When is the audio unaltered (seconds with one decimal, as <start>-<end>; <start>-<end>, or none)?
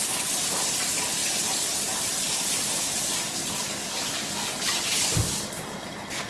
0.0-6.3